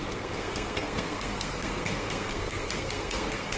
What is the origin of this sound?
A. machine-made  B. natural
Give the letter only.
A